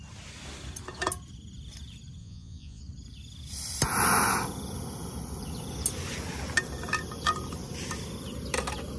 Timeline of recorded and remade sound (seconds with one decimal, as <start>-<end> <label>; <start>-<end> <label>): 0.0-2.2 recorded; 2.2-2.8 remade; 2.8-9.0 recorded

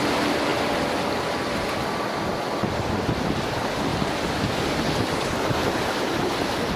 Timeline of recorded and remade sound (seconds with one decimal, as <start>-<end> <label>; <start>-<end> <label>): 0.0-6.8 recorded

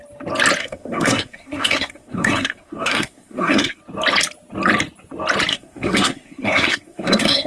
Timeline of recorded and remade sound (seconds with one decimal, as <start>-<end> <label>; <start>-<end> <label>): 0.0-0.6 recorded; 0.6-3.8 remade; 3.8-5.5 recorded; 5.5-7.5 remade

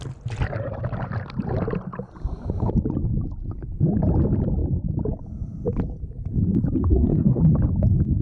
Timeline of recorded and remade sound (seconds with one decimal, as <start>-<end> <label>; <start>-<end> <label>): 0.0-6.8 recorded; 6.8-7.4 remade; 7.4-8.2 recorded

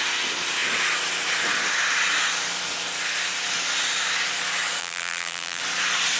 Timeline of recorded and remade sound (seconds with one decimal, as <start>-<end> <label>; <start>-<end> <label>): 0.0-4.8 recorded; 4.8-5.6 remade; 5.6-6.2 recorded